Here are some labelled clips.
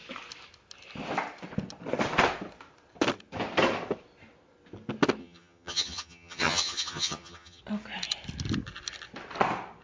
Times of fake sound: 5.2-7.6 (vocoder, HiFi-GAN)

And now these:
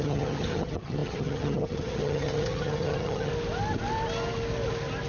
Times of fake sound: 0.0-3.3 (vocoder, HiFi-GAN)

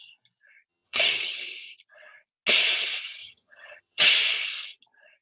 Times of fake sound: 0.7-1.4 (vocoder, HiFi-GAN); 3.2-4.1